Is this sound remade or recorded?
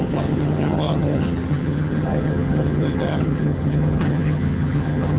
remade